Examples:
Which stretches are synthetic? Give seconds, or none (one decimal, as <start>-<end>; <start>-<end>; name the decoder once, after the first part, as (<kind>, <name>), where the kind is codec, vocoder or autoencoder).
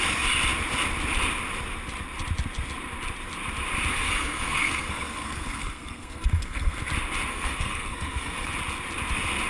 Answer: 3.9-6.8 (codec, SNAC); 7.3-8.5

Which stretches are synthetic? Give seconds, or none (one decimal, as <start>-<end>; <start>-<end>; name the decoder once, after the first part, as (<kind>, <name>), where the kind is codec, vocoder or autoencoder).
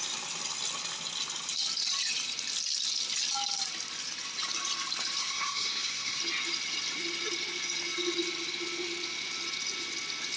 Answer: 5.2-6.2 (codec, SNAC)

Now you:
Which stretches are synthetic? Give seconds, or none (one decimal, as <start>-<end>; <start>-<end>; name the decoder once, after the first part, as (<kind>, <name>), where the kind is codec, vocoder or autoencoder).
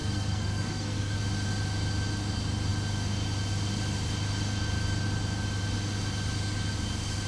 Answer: 0.0-1.2 (codec, SNAC)